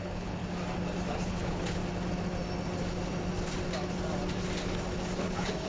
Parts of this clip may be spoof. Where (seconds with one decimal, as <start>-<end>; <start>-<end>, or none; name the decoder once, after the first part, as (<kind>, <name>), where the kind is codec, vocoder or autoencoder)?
0.0-0.4 (codec, HILCodec); 1.1-1.8; 5.2-5.7